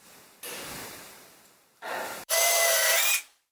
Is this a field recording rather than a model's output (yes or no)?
no